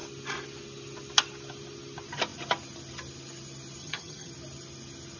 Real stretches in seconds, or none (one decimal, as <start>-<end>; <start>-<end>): 0.0-3.8; 4.3-5.2